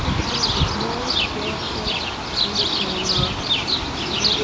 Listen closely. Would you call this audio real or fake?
real